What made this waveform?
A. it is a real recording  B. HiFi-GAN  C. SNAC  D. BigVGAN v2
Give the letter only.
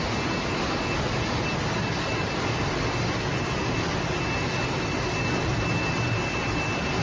A